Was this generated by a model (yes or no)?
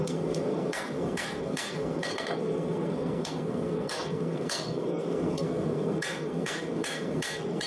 yes